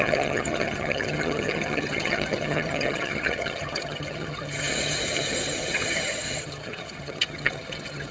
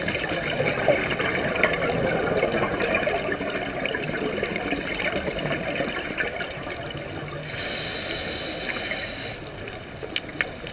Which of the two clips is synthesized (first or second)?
first